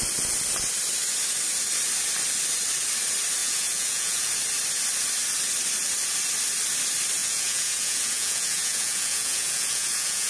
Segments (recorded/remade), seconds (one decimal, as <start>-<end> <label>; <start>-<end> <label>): 0.0-3.4 recorded; 3.4-4.3 remade; 4.3-7.2 recorded; 7.2-10.3 remade